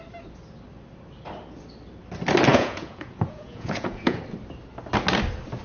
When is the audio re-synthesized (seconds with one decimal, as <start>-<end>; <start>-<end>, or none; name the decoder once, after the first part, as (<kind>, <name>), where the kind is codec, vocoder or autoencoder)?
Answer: 2.5-4.2 (vocoder, Vocos)